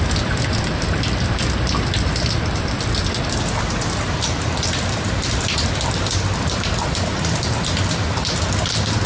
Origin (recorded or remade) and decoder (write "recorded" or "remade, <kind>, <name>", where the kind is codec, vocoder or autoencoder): remade, vocoder, BigVGAN v2